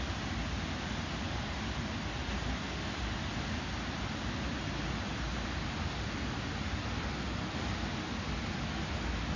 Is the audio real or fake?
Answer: real